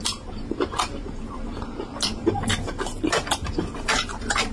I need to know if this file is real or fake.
fake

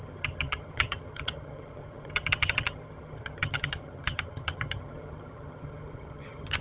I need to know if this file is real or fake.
fake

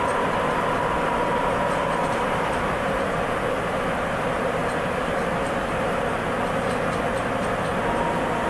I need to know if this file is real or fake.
real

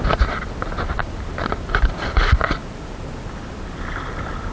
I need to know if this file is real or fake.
fake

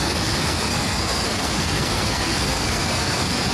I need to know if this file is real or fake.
fake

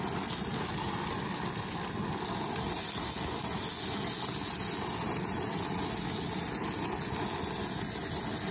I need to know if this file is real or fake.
real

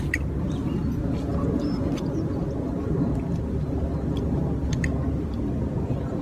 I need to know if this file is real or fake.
real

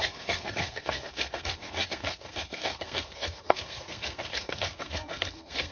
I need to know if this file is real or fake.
fake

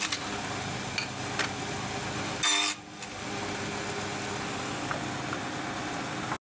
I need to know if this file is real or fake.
real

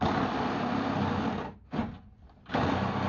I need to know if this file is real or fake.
real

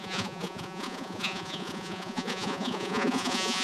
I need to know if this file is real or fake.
fake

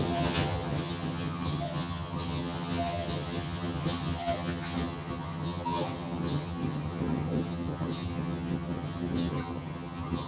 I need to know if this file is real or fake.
fake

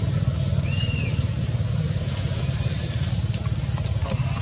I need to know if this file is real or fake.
real